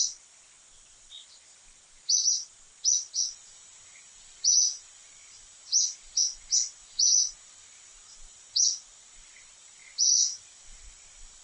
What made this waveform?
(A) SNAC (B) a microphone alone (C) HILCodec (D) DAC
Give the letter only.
B